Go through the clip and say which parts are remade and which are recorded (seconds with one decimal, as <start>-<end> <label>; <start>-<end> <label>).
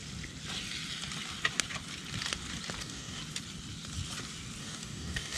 0.0-2.8 recorded; 2.8-3.2 remade; 3.2-4.6 recorded; 4.6-5.4 remade